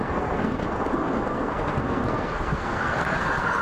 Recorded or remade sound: remade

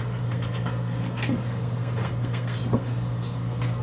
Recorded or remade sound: remade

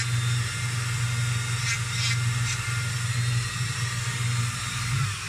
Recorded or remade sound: recorded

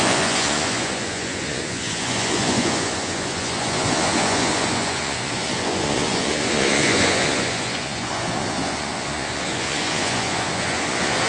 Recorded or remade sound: remade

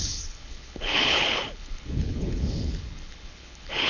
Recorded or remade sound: remade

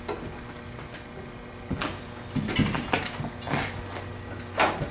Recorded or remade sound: recorded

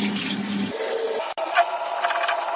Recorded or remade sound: recorded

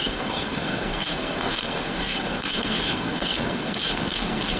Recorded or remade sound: remade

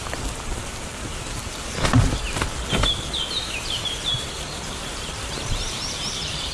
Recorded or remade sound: remade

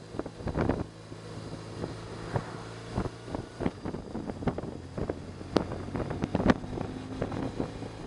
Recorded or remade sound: recorded